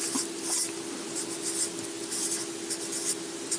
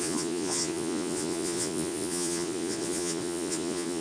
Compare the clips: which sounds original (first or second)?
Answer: first